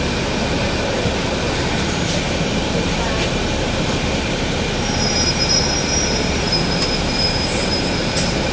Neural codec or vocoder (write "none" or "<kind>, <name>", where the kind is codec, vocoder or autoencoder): vocoder, BigVGAN v2